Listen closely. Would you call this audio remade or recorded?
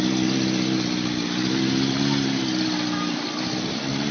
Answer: recorded